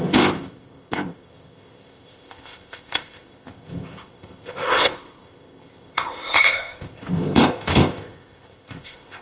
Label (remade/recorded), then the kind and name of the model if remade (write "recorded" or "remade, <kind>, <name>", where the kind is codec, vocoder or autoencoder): remade, codec, ZipCodec